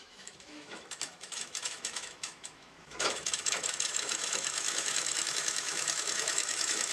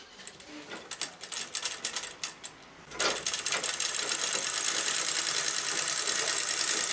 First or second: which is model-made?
first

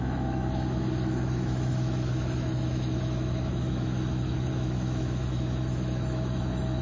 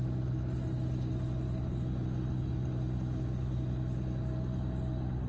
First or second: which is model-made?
first